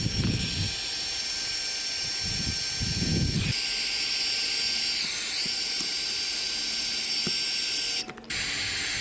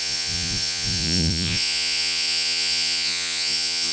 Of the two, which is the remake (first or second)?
second